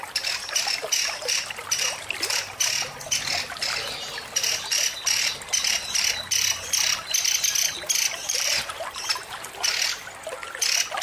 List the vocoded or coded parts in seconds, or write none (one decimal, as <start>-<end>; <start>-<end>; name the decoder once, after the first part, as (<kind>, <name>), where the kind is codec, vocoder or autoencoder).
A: 8.2-9.1 (vocoder, BigVGAN v2)